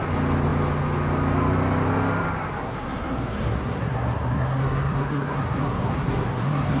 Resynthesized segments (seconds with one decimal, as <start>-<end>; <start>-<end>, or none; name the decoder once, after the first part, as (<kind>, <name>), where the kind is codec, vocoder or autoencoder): 2.6-6.8 (codec, SNAC)

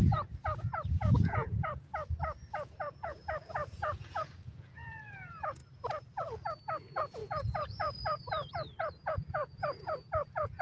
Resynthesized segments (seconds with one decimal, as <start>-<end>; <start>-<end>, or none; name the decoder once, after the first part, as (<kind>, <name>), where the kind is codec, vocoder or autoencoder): 0.0-1.9 (vocoder, Vocos); 2.5-5.6; 6.8-10.6

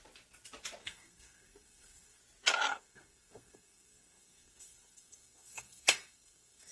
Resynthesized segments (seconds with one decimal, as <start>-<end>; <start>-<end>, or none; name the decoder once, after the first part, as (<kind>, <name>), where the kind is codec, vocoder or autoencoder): 0.8-2.2 (codec, SNAC); 2.7-6.7

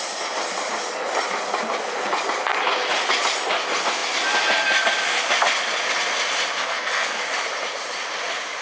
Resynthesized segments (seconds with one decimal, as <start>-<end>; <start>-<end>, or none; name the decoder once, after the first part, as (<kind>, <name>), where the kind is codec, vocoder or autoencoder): 6.6-7.2 (codec, SNAC)